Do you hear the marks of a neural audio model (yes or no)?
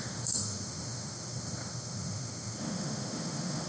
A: yes